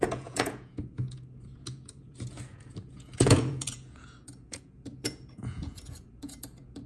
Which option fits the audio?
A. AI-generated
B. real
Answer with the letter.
A